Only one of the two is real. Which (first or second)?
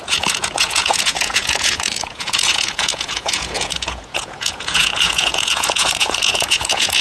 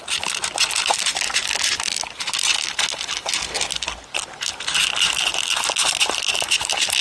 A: second